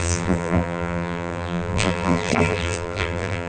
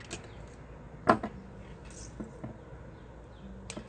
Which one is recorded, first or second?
second